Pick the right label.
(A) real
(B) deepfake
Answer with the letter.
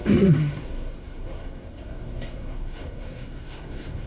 B